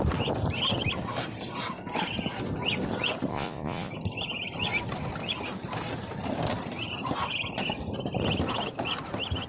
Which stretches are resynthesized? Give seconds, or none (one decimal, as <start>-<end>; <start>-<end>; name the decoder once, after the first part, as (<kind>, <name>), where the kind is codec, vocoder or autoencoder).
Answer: 3.3-3.9 (vocoder, Vocos)